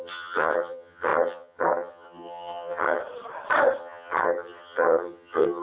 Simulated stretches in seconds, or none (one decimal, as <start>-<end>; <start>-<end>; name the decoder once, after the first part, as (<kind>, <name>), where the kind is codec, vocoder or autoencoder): 0.0-3.0 (vocoder, HiFi-GAN); 3.8-5.6